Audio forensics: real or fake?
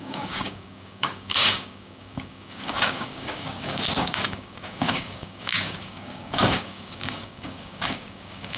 fake